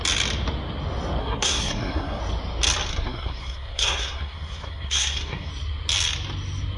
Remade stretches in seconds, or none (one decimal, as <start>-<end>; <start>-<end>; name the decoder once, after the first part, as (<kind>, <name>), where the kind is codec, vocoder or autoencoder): 1.2-2.2 (codec, SNAC); 2.9-5.5